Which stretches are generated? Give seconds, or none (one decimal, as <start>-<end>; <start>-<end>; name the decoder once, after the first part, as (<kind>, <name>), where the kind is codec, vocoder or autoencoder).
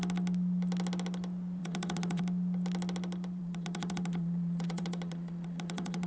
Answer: 1.6-2.2 (vocoder, Vocos); 3.4-6.1